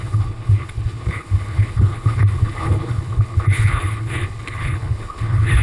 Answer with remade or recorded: remade